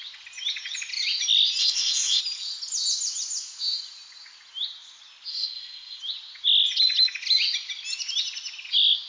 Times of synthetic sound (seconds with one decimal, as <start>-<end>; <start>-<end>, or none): 1.6-2.2; 5.3-6.0